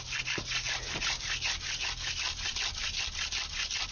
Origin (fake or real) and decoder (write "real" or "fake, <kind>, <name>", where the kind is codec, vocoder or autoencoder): real